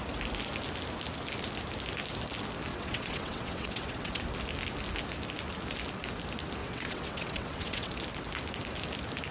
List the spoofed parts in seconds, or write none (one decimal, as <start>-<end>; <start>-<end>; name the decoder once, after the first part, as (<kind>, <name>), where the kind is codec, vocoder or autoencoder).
2.7-4.2 (vocoder, WaveNeXt); 6.6-7.9